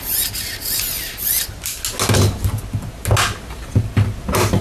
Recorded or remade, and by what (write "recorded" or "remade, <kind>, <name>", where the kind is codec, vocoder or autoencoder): recorded